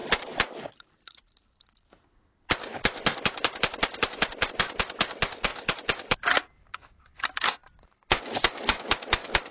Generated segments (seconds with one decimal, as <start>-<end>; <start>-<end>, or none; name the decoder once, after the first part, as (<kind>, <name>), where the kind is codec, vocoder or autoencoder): 0.0-4.5 (vocoder, BigVGAN v2); 5.5-6.3